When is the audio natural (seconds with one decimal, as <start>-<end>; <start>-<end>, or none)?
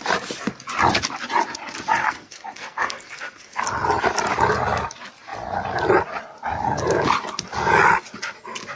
0.0-2.0; 3.6-8.8